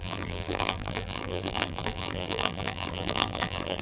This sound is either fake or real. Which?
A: fake